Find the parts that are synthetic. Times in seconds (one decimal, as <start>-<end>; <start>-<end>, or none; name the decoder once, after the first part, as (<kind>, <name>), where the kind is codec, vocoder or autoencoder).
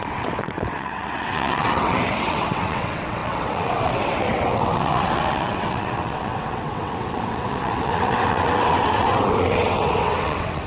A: 0.0-10.7 (vocoder, WaveNeXt)